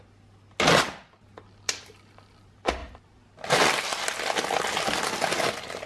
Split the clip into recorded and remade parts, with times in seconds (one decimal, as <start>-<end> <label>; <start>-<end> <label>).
0.0-5.9 recorded